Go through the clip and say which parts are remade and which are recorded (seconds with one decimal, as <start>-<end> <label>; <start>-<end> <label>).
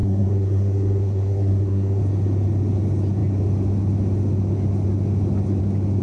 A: 0.0-2.0 remade; 2.0-6.0 recorded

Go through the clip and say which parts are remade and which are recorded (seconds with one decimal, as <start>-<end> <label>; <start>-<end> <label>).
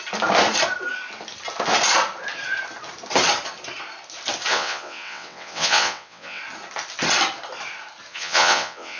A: 0.0-4.5 recorded; 4.5-6.4 remade; 6.4-8.1 recorded; 8.1-9.0 remade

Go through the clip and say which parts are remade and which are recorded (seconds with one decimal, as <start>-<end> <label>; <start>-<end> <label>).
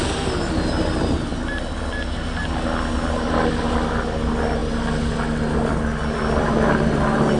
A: 0.0-7.4 recorded